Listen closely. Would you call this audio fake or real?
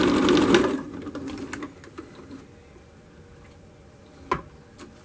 real